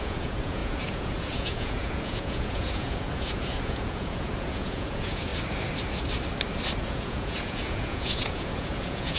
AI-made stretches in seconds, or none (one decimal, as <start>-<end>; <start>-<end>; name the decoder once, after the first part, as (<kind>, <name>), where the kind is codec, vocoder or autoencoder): 0.0-5.3 (vocoder, Vocos); 6.8-9.2